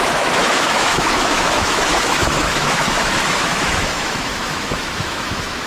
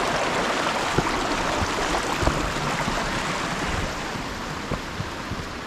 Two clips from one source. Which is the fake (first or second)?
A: first